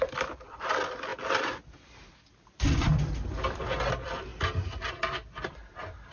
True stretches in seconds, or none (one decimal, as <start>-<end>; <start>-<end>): 1.1-2.1; 2.9-3.6; 4.3-4.9

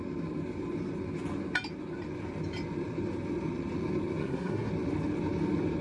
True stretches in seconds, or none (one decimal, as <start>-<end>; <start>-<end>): 0.0-4.2; 4.7-5.8

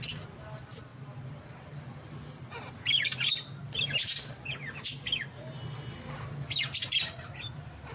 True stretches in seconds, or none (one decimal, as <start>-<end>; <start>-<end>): 0.0-7.9

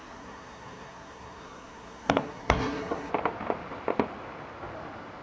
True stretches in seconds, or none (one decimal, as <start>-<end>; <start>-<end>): 3.1-5.2

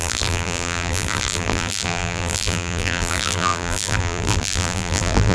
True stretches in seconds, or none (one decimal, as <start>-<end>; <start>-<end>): none

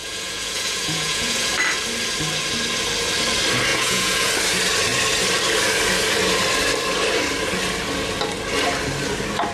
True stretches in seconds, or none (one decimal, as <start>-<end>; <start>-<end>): 1.5-3.7; 4.3-9.5

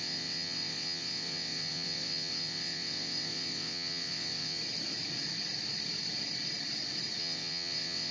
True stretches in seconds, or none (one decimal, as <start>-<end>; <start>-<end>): 4.6-7.2